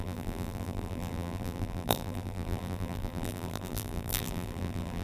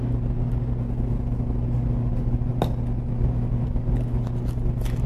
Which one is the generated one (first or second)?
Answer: first